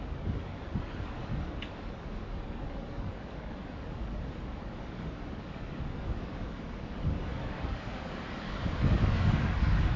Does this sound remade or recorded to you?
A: remade